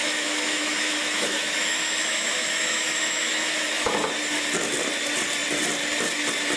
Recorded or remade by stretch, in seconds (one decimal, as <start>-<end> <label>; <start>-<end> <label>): 0.0-3.9 remade; 3.9-6.6 recorded